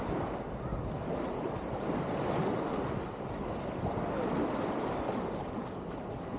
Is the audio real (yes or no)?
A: yes